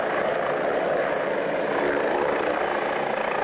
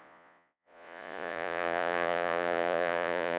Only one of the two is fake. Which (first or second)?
second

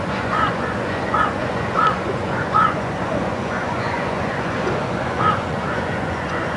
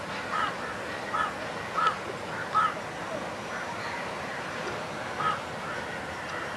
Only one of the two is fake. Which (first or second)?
first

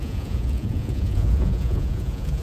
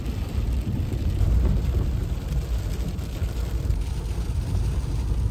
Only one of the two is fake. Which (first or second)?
first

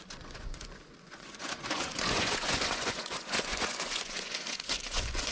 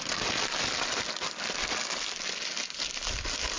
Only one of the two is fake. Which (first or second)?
first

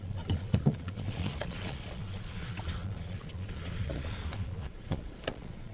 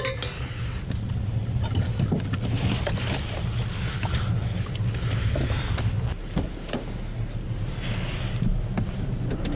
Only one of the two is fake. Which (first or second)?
first